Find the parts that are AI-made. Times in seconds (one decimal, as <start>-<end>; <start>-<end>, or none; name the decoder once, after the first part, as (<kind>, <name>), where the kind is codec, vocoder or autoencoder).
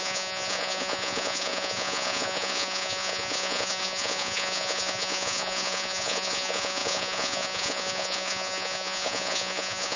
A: 0.0-10.0 (vocoder, Vocos)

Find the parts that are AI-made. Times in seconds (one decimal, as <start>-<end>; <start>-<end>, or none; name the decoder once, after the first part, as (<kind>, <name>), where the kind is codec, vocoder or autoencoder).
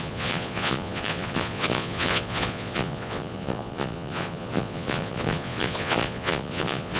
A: 0.0-7.0 (vocoder, Vocos)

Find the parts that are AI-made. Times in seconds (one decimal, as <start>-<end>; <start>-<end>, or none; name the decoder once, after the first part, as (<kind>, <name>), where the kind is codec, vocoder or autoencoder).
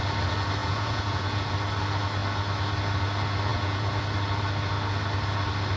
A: 0.6-1.5 (vocoder, Vocos); 3.5-4.0